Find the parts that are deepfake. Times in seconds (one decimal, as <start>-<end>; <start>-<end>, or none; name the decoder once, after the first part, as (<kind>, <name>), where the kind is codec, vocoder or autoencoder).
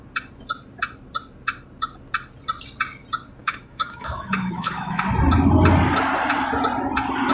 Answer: 3.4-5.0 (autoencoder, DAC-VAE)